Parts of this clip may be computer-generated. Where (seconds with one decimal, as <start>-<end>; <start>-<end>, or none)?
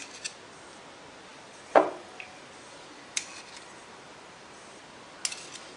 1.3-4.8